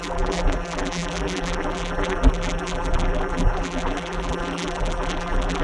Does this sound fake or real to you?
fake